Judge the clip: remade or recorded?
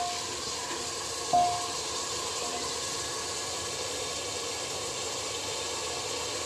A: recorded